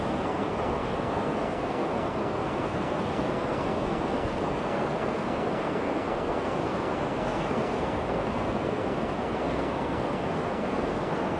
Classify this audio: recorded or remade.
remade